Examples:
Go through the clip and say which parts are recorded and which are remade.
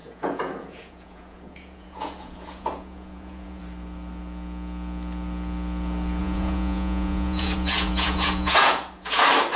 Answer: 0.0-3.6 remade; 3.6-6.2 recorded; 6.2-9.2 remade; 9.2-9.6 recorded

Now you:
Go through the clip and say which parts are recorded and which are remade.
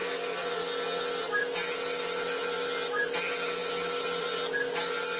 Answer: 0.0-5.2 recorded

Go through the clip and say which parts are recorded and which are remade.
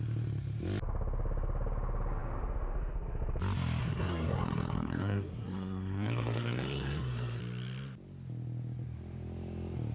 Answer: 0.0-3.8 recorded; 3.8-7.4 remade; 7.4-9.9 recorded